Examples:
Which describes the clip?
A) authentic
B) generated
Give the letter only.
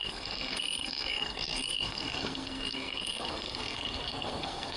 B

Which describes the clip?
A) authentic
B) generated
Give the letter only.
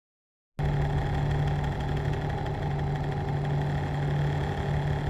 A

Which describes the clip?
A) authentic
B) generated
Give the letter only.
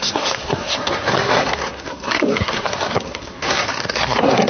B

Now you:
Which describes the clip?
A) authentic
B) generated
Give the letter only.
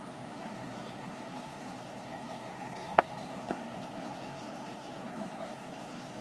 B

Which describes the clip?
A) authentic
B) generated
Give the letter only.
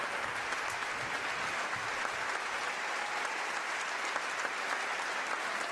A